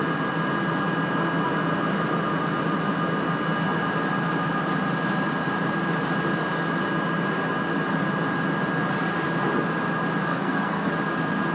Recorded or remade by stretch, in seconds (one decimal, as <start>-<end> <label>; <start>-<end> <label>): 0.0-10.3 recorded; 10.3-10.9 remade; 10.9-11.5 recorded